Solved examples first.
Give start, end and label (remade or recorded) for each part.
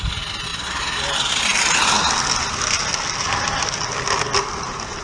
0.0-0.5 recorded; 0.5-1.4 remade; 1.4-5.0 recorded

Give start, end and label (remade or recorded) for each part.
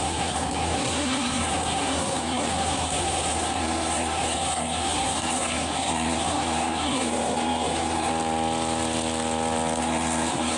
0.0-8.1 remade; 8.1-9.8 recorded; 9.8-10.6 remade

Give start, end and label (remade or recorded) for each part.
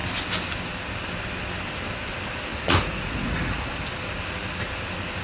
0.0-2.5 recorded; 2.5-3.8 remade; 3.8-5.2 recorded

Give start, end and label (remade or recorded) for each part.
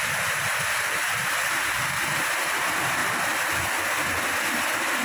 0.0-3.0 remade; 3.0-4.5 recorded; 4.5-5.0 remade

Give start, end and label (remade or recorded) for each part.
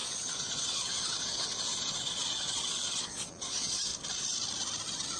0.0-3.9 remade; 3.9-5.2 recorded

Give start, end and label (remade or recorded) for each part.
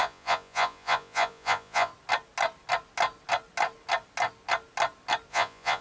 0.0-1.9 remade; 1.9-5.3 recorded; 5.3-5.8 remade